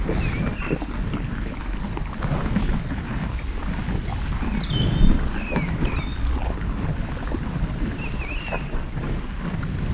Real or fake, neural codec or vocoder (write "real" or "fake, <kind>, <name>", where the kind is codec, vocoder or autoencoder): real